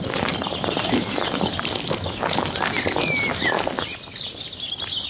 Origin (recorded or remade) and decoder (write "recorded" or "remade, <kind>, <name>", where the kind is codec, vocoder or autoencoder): recorded